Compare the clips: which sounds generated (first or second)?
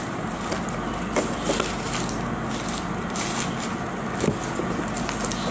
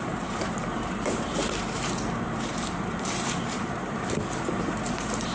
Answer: second